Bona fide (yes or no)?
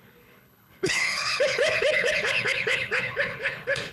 no